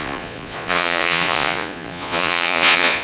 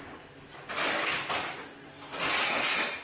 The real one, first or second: second